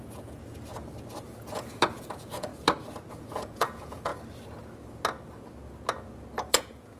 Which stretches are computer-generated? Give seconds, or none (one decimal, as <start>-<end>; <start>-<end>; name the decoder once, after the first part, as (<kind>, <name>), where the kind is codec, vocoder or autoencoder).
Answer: 0.0-0.4 (vocoder, Vocos); 1.2-2.5; 3.1-4.1; 6.5-7.0